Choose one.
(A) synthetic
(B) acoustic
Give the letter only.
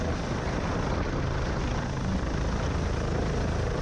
B